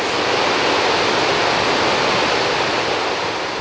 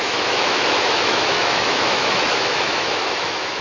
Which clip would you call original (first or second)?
first